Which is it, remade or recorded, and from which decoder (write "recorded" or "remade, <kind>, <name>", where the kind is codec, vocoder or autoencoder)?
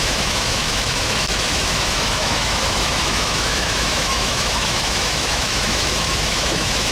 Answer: remade, autoencoder, DAC-VAE